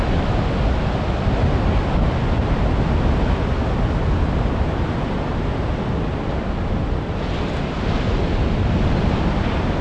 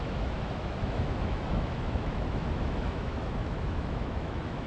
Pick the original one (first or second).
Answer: first